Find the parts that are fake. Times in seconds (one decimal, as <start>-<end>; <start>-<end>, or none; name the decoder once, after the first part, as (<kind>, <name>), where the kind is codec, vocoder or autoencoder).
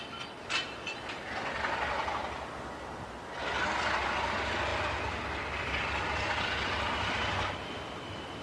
none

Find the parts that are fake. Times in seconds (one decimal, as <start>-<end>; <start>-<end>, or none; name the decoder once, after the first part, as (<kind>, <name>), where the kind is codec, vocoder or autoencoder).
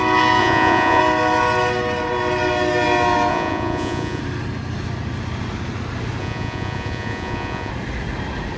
0.4-1.0 (vocoder, Vocos); 3.3-4.2; 6.2-7.7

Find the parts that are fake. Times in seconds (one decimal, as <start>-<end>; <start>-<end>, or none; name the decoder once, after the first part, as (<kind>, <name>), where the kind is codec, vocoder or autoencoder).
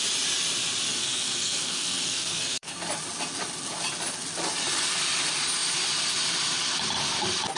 0.9-2.9 (codec, SNAC)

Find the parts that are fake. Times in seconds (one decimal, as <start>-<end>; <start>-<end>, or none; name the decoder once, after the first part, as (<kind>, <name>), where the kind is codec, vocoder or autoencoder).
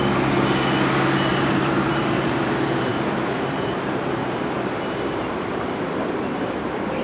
1.3-2.3 (vocoder, BigVGAN v2); 2.9-6.0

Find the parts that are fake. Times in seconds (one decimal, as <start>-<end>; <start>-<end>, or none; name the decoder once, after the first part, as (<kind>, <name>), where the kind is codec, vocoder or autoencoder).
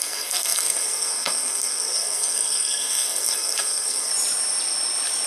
0.0-4.1 (codec, SNAC)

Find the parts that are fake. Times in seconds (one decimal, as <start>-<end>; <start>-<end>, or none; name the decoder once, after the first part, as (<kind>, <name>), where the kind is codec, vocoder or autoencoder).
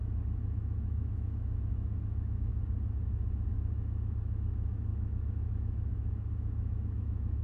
0.0-2.5 (autoencoder, DAC-VAE); 3.5-7.4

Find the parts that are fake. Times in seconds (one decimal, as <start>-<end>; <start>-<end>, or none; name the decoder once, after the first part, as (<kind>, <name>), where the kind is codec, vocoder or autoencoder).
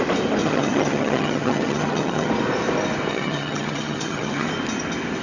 0.4-2.3 (vocoder, HiFi-GAN); 3.1-4.5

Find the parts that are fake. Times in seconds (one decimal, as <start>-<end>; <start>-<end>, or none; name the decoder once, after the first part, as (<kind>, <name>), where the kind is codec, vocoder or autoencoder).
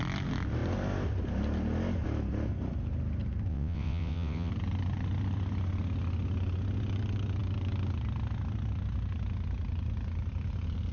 3.5-4.5 (vocoder, WaveNeXt)